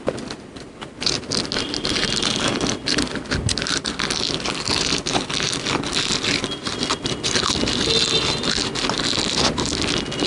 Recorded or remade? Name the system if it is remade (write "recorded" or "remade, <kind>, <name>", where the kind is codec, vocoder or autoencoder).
recorded